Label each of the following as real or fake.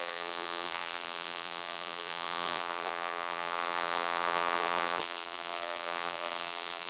fake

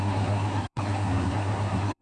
fake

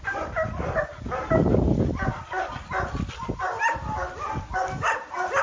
real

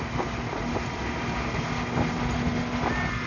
real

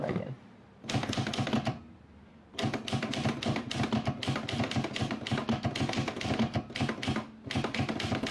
real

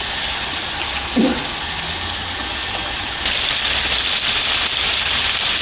real